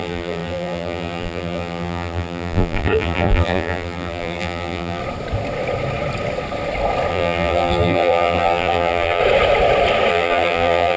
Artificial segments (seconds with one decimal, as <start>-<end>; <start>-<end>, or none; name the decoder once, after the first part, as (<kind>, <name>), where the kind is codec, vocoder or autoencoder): 0.0-5.0 (vocoder, BigVGAN v2); 7.1-9.2; 10.1-11.0